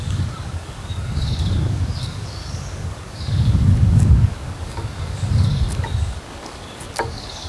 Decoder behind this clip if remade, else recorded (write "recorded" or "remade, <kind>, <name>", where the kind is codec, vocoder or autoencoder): remade, codec, DAC